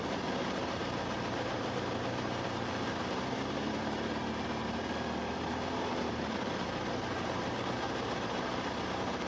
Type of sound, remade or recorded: remade